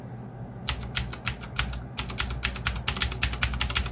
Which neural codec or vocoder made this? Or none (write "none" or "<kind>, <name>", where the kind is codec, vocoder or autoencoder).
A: none